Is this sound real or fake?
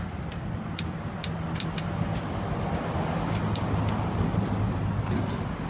real